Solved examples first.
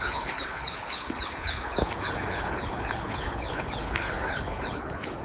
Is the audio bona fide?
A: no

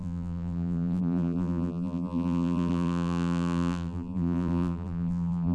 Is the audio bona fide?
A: no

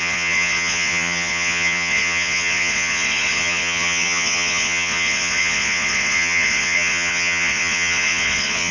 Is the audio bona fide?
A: no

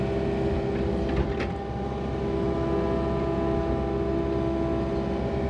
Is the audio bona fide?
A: yes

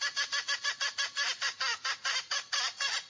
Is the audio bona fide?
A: no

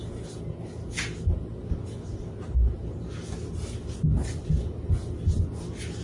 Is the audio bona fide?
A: yes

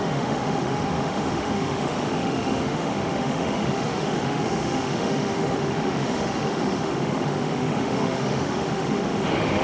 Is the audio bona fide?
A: no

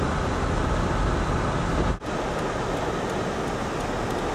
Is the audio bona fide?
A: yes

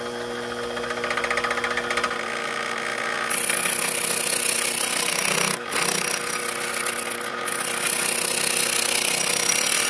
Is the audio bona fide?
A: yes